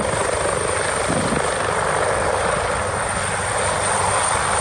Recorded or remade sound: recorded